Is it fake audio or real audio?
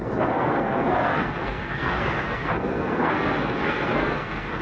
fake